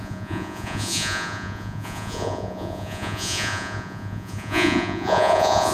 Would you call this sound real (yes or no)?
no